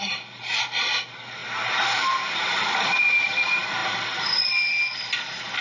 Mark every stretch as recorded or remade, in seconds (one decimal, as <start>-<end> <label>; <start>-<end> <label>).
0.0-5.6 recorded